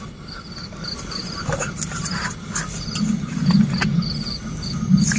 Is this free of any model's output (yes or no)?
yes